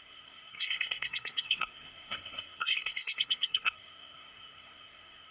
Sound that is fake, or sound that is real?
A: fake